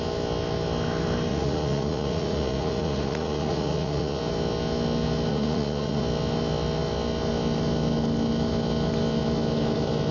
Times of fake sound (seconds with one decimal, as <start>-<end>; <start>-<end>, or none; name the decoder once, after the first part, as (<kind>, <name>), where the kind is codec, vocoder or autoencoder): 1.3-4.2 (vocoder, Vocos); 5.3-6.0